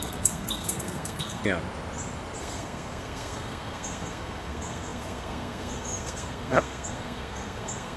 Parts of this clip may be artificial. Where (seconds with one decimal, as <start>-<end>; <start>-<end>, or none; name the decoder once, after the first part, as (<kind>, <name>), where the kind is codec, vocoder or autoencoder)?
0.0-1.4 (codec, SNAC); 2.4-8.0